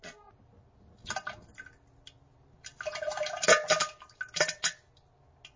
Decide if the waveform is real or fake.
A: real